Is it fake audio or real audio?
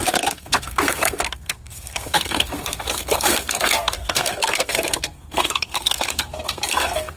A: fake